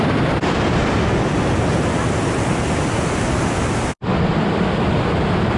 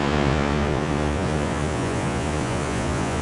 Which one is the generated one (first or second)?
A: second